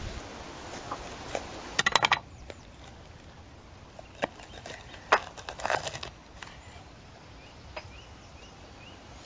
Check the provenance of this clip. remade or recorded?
recorded